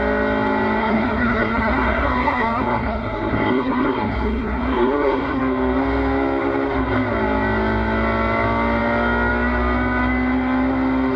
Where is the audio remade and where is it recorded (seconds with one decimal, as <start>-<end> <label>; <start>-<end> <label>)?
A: 0.0-0.8 recorded; 0.8-5.4 remade; 5.4-11.2 recorded